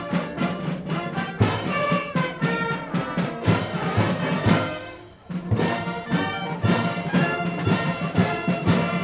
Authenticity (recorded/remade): remade